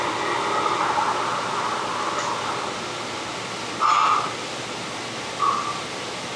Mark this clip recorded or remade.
recorded